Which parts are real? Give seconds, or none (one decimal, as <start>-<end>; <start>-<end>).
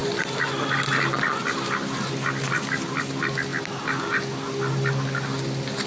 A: 0.0-5.9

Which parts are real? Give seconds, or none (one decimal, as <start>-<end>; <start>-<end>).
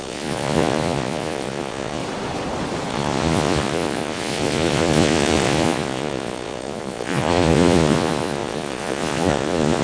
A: 2.0-2.9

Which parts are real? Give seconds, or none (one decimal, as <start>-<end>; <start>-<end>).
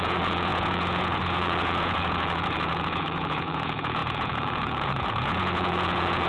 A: none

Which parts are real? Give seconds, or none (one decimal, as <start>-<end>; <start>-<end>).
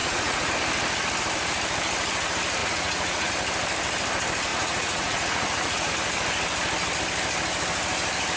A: 0.5-2.6; 3.3-4.5; 5.9-8.4